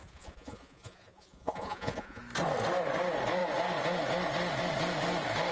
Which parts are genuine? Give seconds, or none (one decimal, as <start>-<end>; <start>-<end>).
2.2-5.5